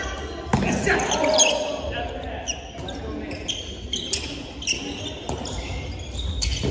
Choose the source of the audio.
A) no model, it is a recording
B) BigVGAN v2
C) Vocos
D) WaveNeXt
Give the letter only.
A